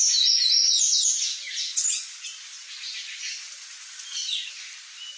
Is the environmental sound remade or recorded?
recorded